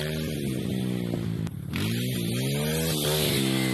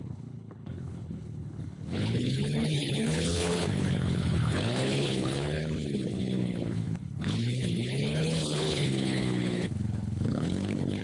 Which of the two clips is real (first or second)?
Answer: first